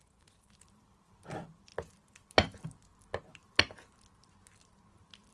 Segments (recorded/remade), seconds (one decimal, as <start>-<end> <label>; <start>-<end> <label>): 0.0-1.7 remade; 1.7-5.3 recorded